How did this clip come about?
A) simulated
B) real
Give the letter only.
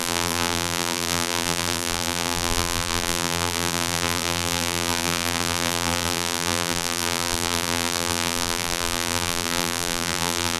A